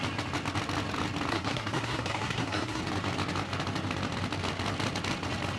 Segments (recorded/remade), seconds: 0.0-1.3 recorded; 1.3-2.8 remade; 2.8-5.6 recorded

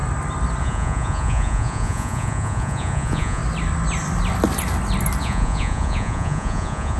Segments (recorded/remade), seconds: 0.0-0.6 recorded; 0.6-3.4 remade; 3.4-5.2 recorded; 5.2-7.0 remade

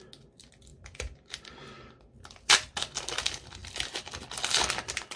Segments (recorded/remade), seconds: 0.0-0.7 recorded; 0.7-1.5 remade; 1.5-5.2 recorded

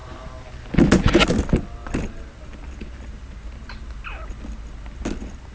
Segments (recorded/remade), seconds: 0.0-5.5 recorded

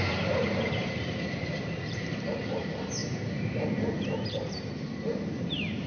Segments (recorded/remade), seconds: 0.0-5.9 remade

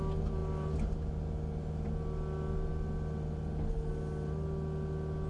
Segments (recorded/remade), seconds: 0.0-5.3 recorded

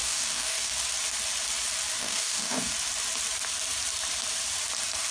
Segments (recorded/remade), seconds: 0.0-0.7 remade; 0.7-2.0 recorded; 2.0-2.7 remade; 2.7-5.1 recorded

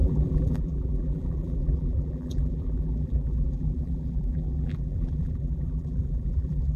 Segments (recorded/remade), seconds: 0.0-6.8 remade